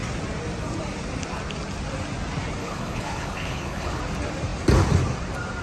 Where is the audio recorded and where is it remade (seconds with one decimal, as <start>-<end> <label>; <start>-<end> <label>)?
0.0-2.6 recorded; 2.6-4.0 remade; 4.0-5.6 recorded

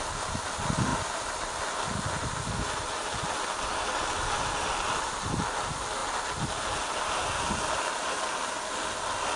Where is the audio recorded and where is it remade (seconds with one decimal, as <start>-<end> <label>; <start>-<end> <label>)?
0.0-9.4 recorded

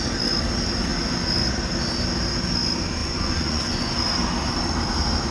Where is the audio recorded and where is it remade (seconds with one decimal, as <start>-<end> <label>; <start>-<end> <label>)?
0.0-3.0 recorded; 3.0-3.9 remade; 3.9-5.3 recorded

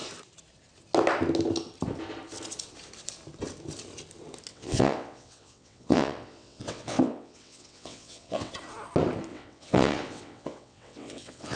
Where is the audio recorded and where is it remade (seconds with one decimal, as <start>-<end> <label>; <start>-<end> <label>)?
0.0-4.5 recorded; 4.5-8.5 remade; 8.5-9.3 recorded; 9.3-11.6 remade

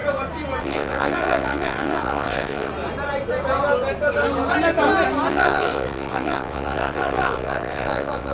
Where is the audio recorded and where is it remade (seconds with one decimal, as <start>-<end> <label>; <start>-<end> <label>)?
0.0-0.6 recorded; 0.6-2.7 remade; 2.7-5.3 recorded; 5.3-8.3 remade

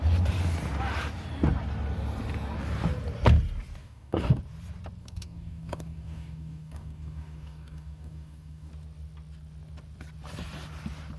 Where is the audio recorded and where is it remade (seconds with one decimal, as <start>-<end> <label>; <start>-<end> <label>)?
0.0-3.8 recorded; 3.8-4.4 remade; 4.4-5.0 recorded; 5.0-8.7 remade; 8.7-11.2 recorded